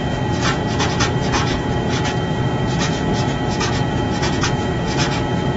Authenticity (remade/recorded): remade